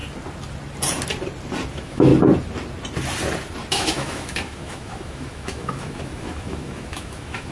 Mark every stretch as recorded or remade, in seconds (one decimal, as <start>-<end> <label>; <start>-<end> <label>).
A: 0.0-1.7 recorded; 1.7-2.1 remade; 2.1-3.7 recorded; 3.7-7.5 remade